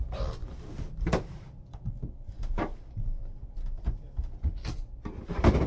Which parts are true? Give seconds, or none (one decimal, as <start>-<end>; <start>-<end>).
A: 0.0-5.7